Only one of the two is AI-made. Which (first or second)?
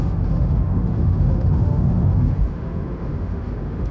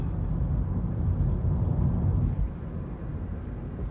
first